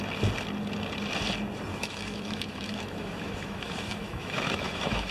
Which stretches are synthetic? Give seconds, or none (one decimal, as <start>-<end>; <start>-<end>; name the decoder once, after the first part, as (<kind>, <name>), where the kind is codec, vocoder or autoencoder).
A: 1.7-5.1 (autoencoder, DAC-VAE)